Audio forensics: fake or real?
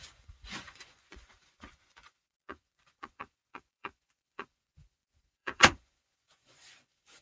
fake